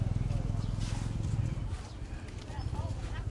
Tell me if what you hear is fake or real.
real